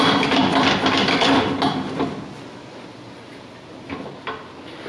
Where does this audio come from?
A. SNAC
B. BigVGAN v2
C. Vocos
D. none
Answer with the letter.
D